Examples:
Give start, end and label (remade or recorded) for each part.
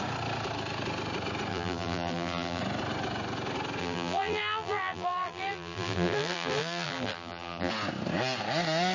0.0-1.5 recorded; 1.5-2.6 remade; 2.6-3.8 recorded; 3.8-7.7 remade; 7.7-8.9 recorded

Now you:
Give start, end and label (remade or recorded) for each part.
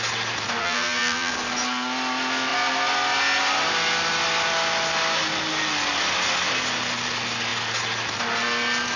0.0-0.6 recorded; 0.6-1.3 remade; 1.3-9.0 recorded